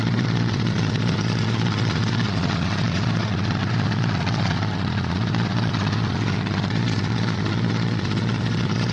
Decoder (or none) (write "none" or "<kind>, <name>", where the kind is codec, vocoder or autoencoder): vocoder, Vocos